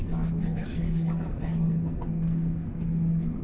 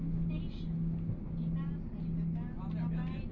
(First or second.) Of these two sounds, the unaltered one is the second